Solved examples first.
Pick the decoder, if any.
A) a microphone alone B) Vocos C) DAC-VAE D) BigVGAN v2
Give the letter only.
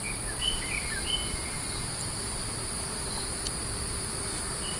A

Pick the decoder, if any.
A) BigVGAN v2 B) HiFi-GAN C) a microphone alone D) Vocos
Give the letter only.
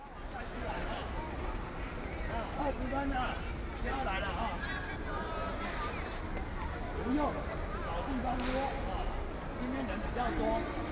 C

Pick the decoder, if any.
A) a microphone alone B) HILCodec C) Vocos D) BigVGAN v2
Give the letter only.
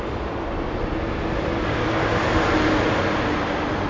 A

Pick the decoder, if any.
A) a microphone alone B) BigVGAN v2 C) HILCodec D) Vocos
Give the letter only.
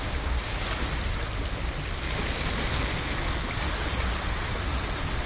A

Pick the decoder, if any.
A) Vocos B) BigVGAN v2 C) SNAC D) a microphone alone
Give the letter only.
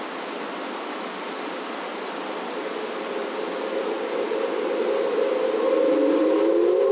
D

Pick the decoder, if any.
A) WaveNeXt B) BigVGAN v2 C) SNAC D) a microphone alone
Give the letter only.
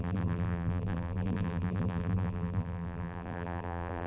B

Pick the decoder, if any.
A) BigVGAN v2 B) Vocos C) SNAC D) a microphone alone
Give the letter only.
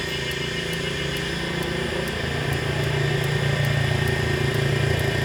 D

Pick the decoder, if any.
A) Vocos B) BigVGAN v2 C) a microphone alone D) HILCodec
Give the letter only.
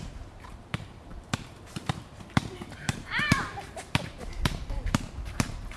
B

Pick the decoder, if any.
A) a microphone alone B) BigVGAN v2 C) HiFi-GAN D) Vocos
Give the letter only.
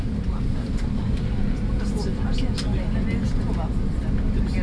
A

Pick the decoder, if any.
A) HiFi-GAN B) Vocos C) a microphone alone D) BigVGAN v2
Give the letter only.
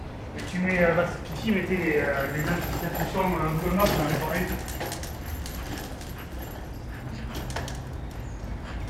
C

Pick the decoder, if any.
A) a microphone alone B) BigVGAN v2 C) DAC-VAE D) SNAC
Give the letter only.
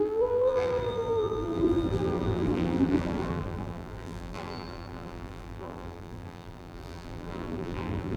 B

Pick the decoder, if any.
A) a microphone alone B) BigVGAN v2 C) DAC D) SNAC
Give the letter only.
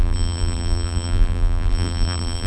B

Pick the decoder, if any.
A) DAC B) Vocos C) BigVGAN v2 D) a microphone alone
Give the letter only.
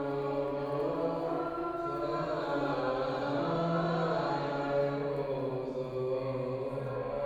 D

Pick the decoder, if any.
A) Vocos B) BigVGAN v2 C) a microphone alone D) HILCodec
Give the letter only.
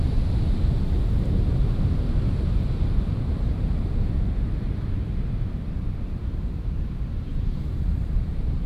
B